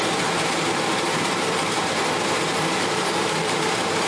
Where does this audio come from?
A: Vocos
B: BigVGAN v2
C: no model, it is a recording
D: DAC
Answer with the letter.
B